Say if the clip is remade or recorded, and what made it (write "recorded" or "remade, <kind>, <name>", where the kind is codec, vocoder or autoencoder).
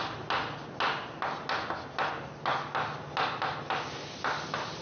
recorded